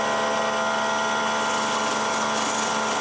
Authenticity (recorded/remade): recorded